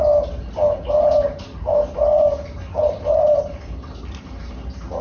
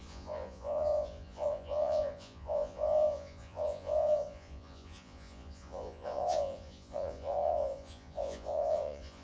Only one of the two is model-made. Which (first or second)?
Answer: second